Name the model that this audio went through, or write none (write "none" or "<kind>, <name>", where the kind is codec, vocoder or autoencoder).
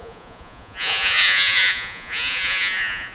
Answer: vocoder, Vocos